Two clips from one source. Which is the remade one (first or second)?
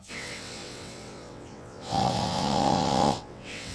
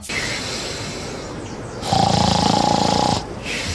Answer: first